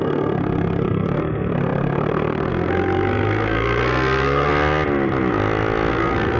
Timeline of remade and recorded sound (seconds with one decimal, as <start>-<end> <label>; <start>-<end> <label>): 0.0-4.5 remade; 4.5-5.9 recorded; 5.9-6.4 remade